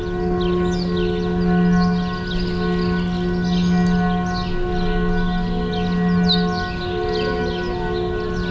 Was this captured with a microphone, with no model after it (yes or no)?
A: yes